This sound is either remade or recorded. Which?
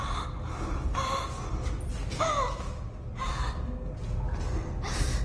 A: recorded